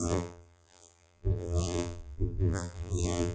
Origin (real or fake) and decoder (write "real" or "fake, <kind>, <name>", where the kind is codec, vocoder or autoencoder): fake, vocoder, BigVGAN v2